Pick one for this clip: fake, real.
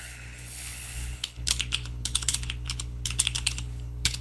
fake